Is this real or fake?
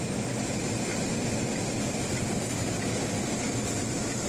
real